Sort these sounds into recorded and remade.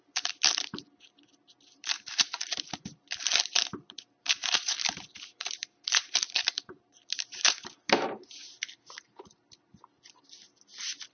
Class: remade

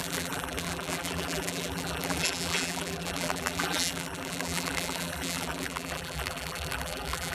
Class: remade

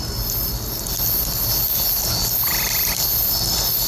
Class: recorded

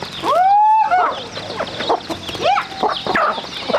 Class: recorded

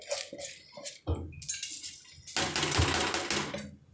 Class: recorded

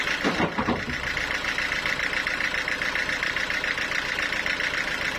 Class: recorded